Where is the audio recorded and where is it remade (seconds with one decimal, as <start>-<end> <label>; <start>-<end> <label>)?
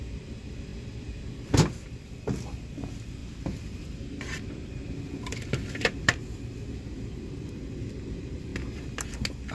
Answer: 0.0-3.2 recorded; 3.2-7.5 remade; 7.5-9.5 recorded